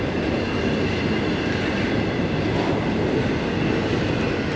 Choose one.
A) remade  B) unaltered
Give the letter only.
B